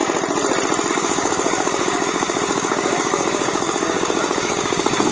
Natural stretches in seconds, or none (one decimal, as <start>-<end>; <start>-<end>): 0.0-0.9